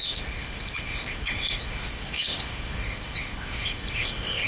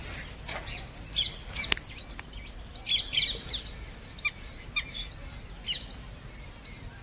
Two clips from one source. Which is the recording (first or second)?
second